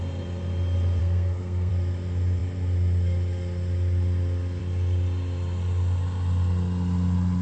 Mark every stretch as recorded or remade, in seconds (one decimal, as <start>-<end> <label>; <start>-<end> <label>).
0.0-1.0 recorded; 1.0-1.7 remade; 1.7-7.4 recorded